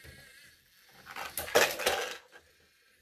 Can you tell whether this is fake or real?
real